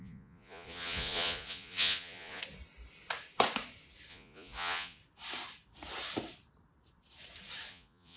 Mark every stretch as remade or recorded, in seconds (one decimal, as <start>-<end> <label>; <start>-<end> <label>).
0.0-2.4 remade; 2.4-4.1 recorded; 4.1-5.0 remade; 5.0-7.7 recorded; 7.7-8.2 remade